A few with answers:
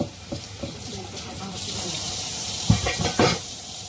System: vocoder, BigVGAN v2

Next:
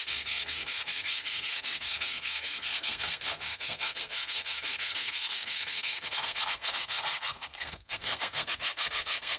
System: codec, SNAC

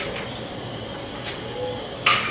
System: none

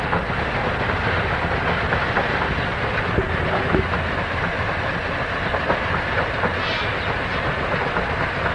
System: none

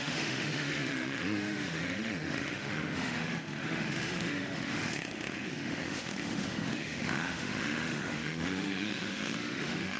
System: autoencoder, DAC-VAE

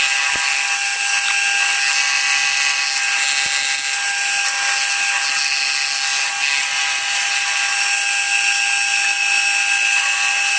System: none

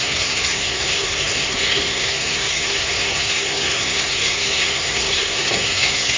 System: codec, SNAC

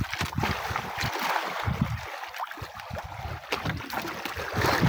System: none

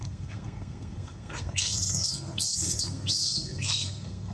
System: codec, SNAC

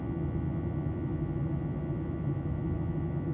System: none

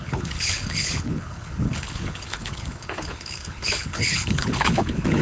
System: codec, HILCodec